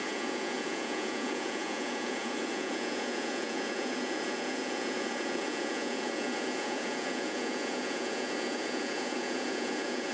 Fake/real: fake